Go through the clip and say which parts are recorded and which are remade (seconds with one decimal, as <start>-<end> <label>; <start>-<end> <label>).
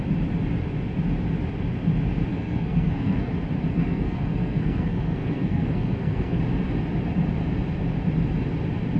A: 0.0-2.3 recorded; 2.3-3.3 remade; 3.3-3.7 recorded; 3.7-6.4 remade; 6.4-9.0 recorded